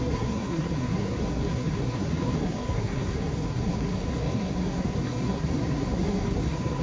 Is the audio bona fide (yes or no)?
no